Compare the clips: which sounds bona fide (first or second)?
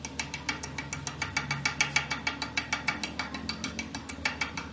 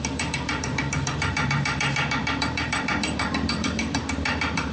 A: first